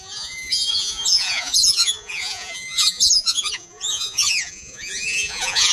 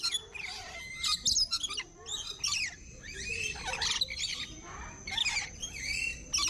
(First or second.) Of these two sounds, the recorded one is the second